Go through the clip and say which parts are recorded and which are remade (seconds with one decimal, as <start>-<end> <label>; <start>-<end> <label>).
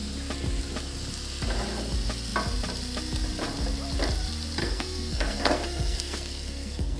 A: 0.0-4.6 recorded; 4.6-7.0 remade